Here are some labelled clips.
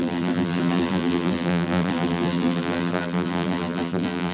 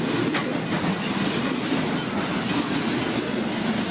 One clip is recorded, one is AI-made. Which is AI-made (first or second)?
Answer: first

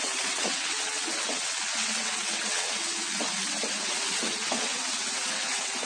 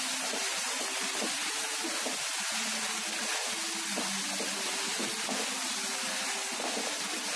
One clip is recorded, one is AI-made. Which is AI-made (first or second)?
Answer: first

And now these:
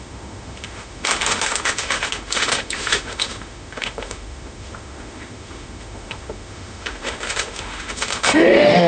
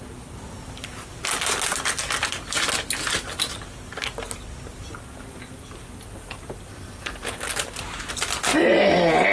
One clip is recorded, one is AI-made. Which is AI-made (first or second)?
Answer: first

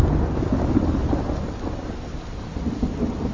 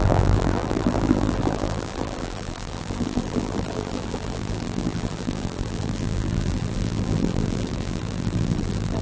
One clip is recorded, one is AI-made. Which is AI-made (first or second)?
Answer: second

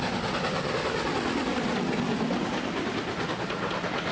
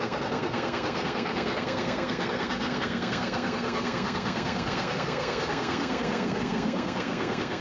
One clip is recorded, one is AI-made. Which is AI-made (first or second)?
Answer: second